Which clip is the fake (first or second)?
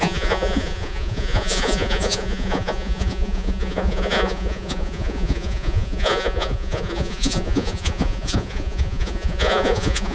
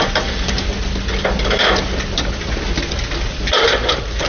first